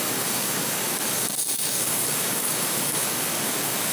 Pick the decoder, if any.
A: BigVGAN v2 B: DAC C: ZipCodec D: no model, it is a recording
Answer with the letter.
B